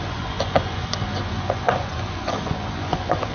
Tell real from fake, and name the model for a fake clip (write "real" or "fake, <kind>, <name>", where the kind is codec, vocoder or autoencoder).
fake, vocoder, Vocos